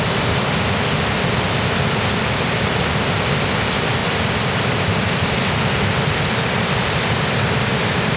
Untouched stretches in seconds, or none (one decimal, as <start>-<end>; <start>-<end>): 0.0-8.2